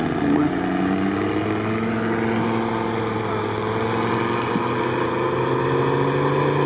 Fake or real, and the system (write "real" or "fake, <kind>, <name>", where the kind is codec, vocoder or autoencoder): real